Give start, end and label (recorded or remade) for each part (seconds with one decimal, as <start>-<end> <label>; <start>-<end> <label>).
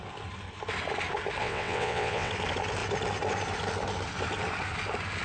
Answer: 0.0-1.4 recorded; 1.4-2.3 remade; 2.3-5.2 recorded